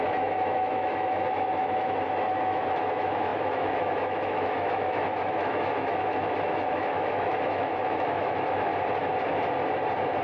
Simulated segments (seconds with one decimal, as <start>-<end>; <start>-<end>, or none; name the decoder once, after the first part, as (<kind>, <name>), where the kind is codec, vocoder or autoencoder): 0.0-8.7 (autoencoder, DAC-VAE)

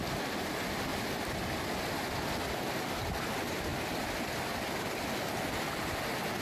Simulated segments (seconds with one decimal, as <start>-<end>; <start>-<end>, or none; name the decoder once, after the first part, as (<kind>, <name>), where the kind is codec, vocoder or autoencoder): none